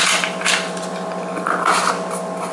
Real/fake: real